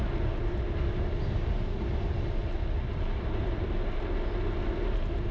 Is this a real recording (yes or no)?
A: yes